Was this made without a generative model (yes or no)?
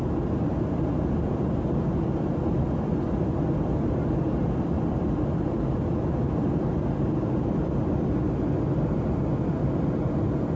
yes